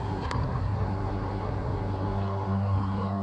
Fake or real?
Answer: fake